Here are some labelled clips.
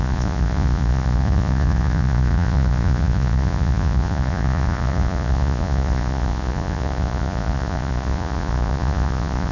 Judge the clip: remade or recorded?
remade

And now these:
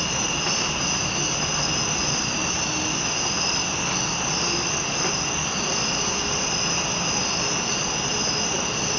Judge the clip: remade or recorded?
recorded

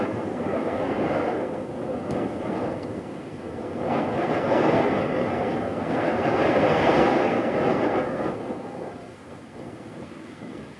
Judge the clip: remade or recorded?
remade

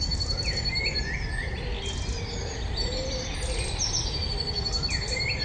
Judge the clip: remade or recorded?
recorded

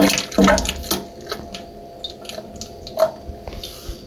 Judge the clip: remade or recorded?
recorded